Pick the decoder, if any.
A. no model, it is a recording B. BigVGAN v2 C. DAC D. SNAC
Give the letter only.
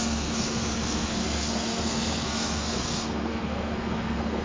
D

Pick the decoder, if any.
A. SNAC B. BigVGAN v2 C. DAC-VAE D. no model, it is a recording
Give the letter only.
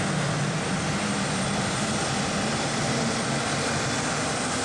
D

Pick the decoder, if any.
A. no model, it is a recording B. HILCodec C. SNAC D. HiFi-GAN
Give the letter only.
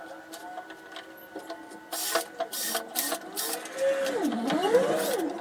A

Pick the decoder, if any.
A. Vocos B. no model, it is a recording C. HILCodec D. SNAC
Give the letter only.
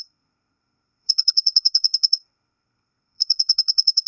D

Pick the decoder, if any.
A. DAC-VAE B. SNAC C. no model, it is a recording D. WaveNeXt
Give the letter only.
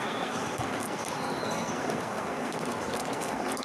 B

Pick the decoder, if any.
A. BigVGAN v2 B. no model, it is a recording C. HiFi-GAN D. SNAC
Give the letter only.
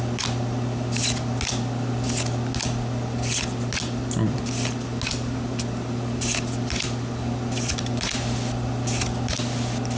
B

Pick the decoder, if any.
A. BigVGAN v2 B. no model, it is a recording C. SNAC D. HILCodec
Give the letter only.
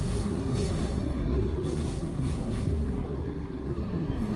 C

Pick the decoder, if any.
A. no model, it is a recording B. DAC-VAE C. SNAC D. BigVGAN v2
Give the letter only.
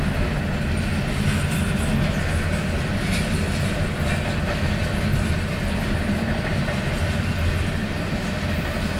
A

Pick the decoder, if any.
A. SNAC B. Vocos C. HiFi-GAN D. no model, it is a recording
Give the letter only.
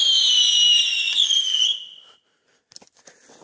D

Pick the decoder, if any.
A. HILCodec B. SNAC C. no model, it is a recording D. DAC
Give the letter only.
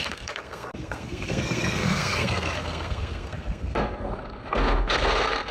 B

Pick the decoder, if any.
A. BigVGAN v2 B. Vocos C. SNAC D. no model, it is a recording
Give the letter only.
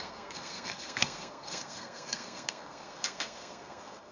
C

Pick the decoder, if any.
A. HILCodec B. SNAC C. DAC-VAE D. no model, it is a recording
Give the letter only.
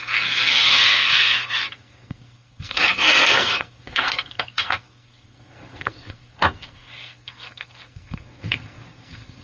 B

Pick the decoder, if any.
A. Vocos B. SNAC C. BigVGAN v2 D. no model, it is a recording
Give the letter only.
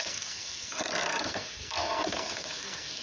B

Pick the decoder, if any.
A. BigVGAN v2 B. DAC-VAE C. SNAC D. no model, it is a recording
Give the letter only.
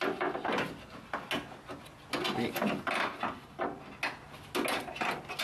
D